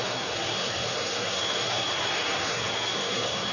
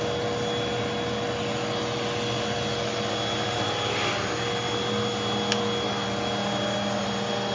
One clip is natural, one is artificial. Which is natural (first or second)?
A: second